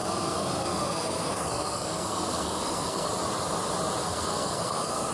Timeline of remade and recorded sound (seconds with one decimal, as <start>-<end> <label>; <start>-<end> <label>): 0.0-3.1 remade; 3.1-4.0 recorded; 4.0-5.1 remade